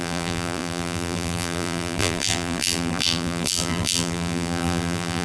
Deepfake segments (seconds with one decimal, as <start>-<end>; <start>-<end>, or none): 0.0-5.2